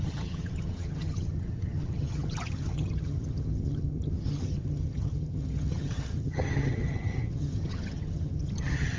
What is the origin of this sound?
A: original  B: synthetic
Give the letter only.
B